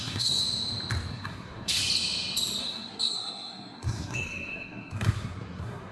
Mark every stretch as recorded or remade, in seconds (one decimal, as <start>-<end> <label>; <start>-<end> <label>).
0.0-0.4 remade; 0.4-1.1 recorded; 1.1-1.8 remade; 1.8-2.6 recorded; 2.6-5.9 remade